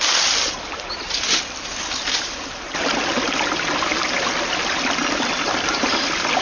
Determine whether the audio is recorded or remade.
recorded